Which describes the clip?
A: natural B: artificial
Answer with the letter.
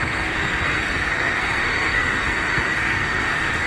B